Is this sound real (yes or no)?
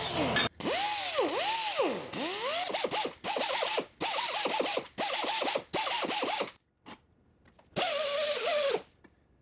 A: yes